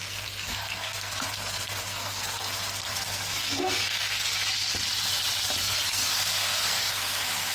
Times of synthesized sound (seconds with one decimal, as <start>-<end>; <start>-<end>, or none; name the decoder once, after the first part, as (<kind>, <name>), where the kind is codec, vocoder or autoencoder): 0.0-4.3 (codec, SNAC); 5.6-7.5